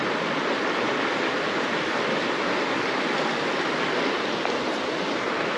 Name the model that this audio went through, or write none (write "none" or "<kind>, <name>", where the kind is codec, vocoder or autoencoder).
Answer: none